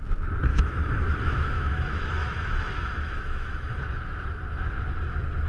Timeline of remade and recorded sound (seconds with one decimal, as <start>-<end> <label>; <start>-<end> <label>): 0.0-0.5 recorded; 0.5-3.8 remade; 3.8-5.5 recorded

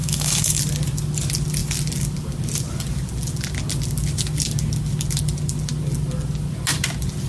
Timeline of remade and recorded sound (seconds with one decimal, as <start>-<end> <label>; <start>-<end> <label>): 0.0-0.6 remade; 0.6-7.3 recorded

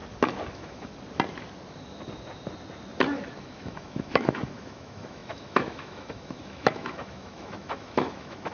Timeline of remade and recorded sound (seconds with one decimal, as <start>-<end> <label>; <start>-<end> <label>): 0.0-0.5 recorded; 0.5-0.9 remade; 0.9-3.4 recorded; 3.4-8.5 remade

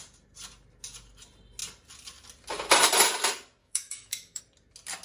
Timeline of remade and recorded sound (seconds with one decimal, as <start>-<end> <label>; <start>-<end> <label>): 0.0-3.6 recorded; 3.6-4.4 remade; 4.4-5.0 recorded

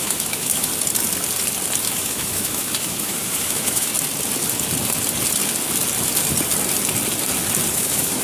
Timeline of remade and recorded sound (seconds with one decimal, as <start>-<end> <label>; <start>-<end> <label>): 0.0-0.7 remade; 0.7-1.8 recorded; 1.8-3.9 remade; 3.9-7.7 recorded; 7.7-8.2 remade

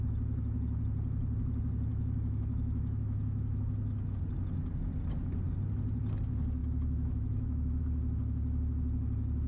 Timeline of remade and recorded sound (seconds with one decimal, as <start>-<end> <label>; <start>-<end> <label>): 0.0-1.9 recorded; 1.9-4.2 remade; 4.2-6.6 recorded; 6.6-7.8 remade; 7.8-9.5 recorded

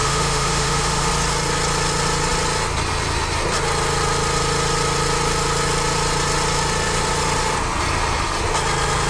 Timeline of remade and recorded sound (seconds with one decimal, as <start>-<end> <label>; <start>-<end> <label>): 0.0-1.1 remade; 1.1-9.1 recorded

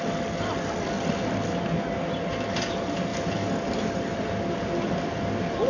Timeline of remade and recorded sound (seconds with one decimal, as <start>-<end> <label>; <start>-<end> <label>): 0.0-5.7 recorded